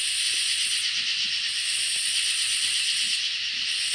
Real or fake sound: real